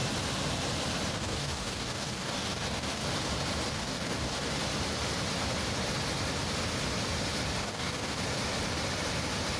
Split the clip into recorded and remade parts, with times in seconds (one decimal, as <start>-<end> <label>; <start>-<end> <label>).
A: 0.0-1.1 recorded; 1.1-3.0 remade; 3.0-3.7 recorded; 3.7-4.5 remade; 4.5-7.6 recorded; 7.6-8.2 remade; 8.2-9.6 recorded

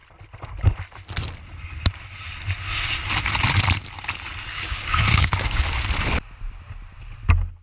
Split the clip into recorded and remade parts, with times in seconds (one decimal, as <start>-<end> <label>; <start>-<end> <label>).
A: 0.0-4.5 recorded; 4.5-5.6 remade; 5.6-7.6 recorded

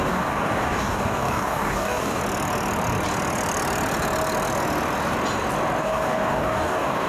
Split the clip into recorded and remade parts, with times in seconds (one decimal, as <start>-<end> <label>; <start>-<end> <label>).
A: 0.0-2.2 remade; 2.2-5.8 recorded; 5.8-7.1 remade

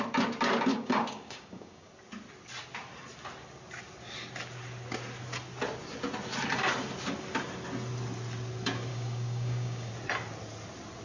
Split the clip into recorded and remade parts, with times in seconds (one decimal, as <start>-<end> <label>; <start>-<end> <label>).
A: 0.0-0.7 recorded; 0.7-1.9 remade; 1.9-8.9 recorded; 8.9-9.9 remade; 9.9-11.0 recorded